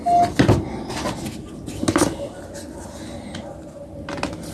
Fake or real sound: real